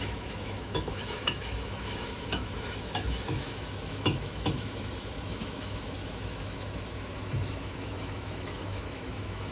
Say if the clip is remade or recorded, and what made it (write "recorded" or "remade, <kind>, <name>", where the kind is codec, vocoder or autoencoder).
remade, autoencoder, DAC-VAE